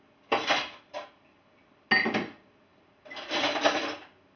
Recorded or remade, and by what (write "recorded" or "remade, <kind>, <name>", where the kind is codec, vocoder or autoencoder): recorded